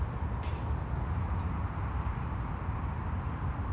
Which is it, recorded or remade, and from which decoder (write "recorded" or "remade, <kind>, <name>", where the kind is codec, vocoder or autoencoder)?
recorded